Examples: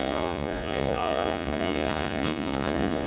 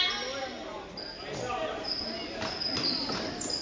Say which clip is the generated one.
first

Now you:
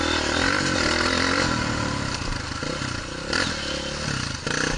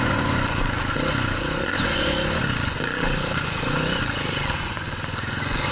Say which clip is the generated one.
second